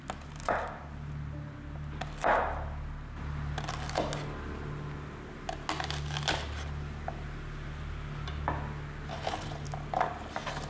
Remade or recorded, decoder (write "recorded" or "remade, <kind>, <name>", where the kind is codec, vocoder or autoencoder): recorded